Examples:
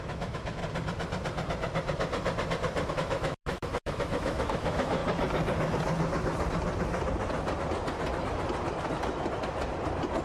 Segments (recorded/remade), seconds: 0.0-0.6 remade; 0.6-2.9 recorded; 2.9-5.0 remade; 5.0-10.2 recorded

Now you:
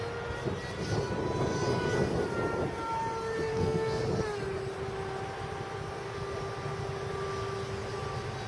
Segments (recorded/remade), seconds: 0.0-3.5 recorded; 3.5-4.0 remade; 4.0-8.5 recorded

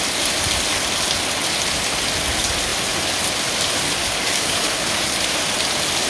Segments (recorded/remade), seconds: 0.0-4.0 recorded; 4.0-5.0 remade; 5.0-6.1 recorded

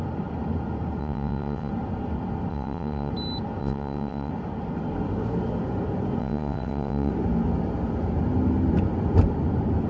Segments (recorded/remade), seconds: 0.0-1.0 recorded; 1.0-1.7 remade; 1.7-2.5 recorded; 2.5-3.1 remade; 3.1-3.6 recorded; 3.6-4.3 remade; 4.3-6.2 recorded; 6.2-7.1 remade; 7.1-9.9 recorded

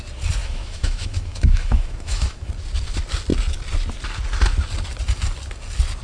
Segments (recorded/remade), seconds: 0.0-0.4 recorded; 0.4-2.5 remade; 2.5-6.0 recorded

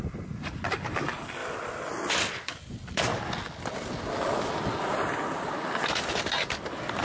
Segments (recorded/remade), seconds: 0.0-7.0 recorded

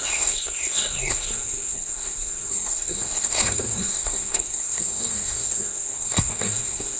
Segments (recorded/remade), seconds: 0.0-7.0 remade

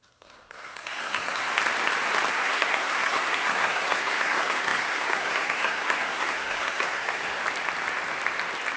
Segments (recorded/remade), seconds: 0.0-1.5 remade; 1.5-2.3 recorded; 2.3-7.4 remade; 7.4-8.8 recorded